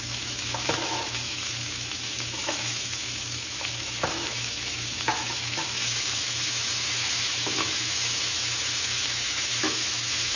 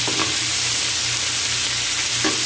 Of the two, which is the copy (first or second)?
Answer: first